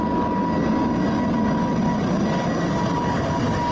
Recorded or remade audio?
recorded